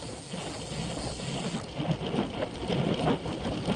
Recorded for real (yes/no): yes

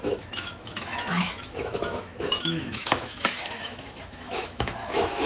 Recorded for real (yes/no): no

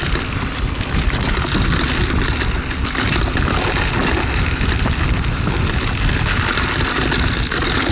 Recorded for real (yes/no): yes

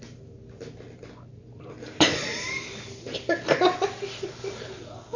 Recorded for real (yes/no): yes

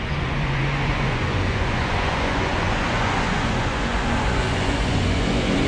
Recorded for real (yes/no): no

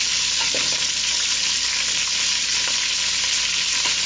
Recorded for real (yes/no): yes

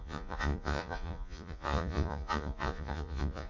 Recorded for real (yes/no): no